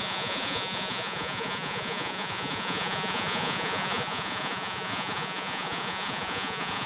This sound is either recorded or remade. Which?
remade